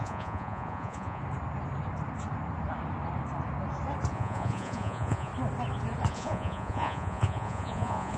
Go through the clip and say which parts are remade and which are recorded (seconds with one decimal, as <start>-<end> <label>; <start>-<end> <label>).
0.0-1.2 remade; 1.2-4.1 recorded; 4.1-5.3 remade; 5.3-6.1 recorded; 6.1-8.2 remade